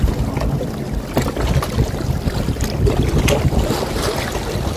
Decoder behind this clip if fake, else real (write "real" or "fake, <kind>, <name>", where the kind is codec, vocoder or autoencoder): real